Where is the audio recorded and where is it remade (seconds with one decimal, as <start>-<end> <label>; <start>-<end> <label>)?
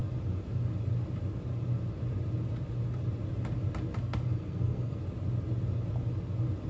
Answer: 0.0-4.0 recorded; 4.0-5.0 remade; 5.0-6.7 recorded